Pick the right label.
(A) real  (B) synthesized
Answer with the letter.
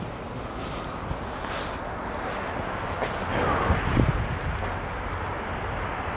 A